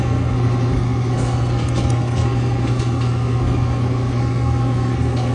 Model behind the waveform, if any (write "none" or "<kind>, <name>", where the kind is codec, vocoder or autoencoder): codec, SNAC